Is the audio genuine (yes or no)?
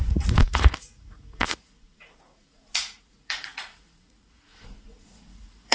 no